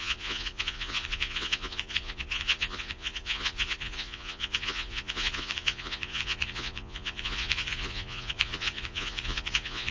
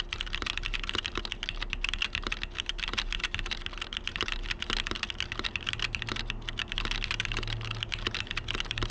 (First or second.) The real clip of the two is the second